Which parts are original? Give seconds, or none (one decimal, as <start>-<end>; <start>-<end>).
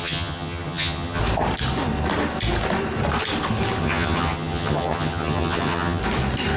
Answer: 1.2-3.8; 6.0-6.6